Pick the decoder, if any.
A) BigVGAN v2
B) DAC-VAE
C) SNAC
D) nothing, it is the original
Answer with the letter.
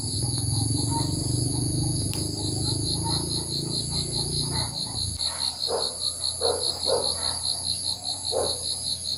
D